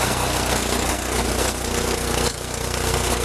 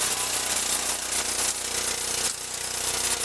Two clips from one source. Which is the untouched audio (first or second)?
second